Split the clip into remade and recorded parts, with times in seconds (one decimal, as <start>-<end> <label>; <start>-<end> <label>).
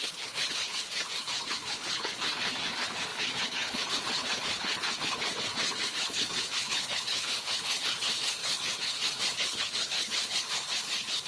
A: 0.0-11.3 remade